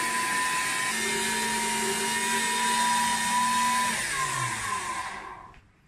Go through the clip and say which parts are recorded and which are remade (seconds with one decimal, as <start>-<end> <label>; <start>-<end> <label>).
0.0-5.9 recorded